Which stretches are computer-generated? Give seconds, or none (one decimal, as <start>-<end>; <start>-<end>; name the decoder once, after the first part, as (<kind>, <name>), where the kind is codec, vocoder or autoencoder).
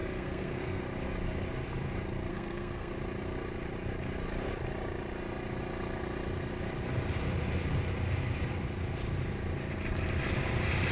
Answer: 0.0-0.8 (codec, SNAC); 2.3-2.9